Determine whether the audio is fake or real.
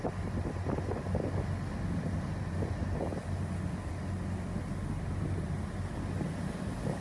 real